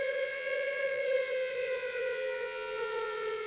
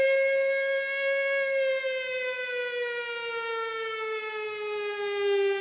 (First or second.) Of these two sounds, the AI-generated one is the first